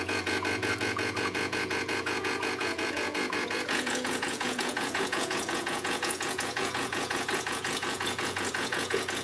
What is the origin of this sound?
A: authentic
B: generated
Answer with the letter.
B